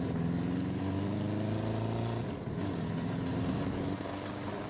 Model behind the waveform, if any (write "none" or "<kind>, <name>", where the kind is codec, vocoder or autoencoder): none